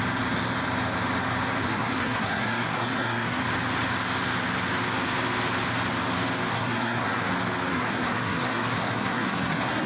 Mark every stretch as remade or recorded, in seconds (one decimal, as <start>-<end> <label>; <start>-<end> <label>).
0.0-1.6 recorded; 1.6-3.4 remade; 3.4-6.5 recorded; 6.5-7.3 remade; 7.3-7.7 recorded; 7.7-9.9 remade